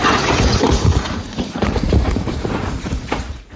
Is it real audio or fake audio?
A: fake